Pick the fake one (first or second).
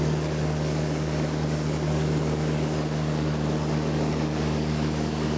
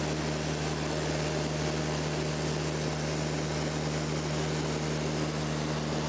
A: first